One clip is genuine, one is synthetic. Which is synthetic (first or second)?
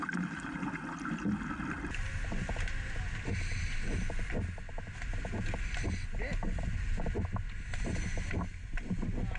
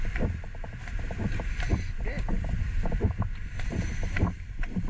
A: second